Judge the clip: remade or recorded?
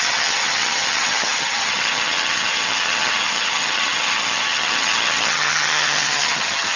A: remade